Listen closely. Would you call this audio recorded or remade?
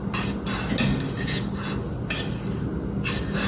recorded